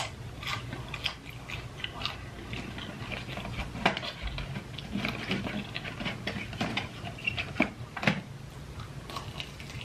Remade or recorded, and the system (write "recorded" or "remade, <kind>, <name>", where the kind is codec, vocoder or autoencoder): recorded